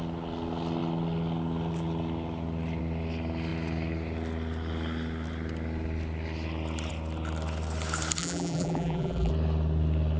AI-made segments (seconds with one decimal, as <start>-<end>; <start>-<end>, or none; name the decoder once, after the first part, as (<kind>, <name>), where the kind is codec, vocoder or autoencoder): 8.2-9.3 (vocoder, BigVGAN v2)